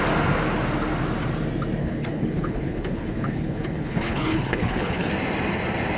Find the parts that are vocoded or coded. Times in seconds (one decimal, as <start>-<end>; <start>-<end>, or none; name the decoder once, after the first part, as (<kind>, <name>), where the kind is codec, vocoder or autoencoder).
1.8-5.1 (codec, HILCodec)